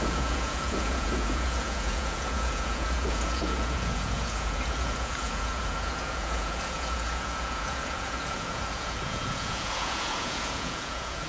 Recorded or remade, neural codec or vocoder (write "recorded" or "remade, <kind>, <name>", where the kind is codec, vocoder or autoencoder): remade, vocoder, Vocos